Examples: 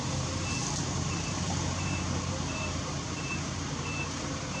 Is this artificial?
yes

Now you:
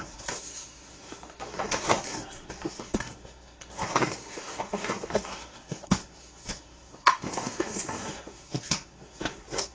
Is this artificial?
yes